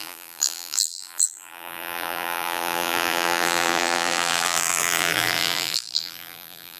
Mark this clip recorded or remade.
remade